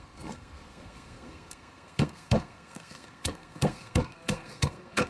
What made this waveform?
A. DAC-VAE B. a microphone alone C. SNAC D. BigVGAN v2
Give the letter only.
C